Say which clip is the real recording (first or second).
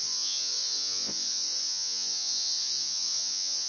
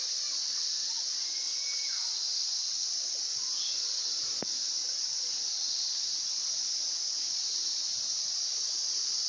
second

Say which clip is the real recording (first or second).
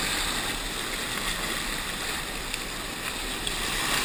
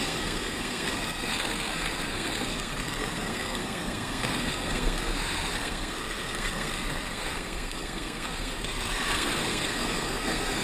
first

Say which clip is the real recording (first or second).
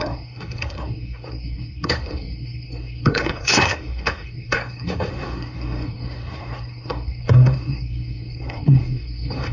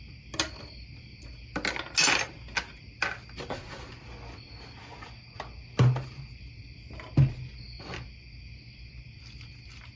second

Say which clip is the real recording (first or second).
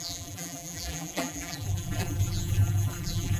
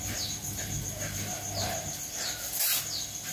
second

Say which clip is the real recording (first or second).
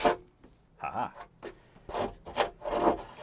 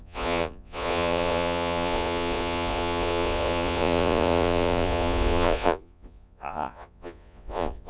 first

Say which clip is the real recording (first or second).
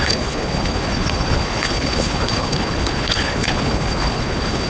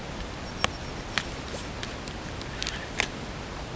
second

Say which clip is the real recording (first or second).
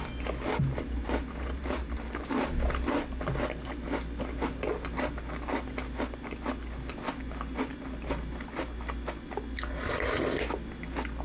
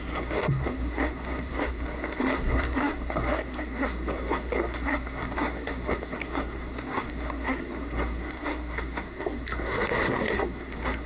first